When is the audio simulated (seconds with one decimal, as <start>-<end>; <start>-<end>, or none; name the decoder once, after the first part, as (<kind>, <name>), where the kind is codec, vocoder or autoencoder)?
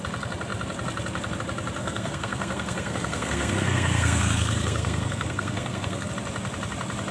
1.8-6.1 (codec, SNAC)